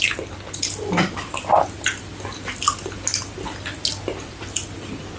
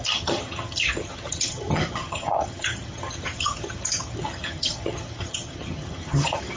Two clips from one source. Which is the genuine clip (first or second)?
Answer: first